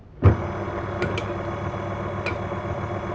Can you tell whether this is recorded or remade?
recorded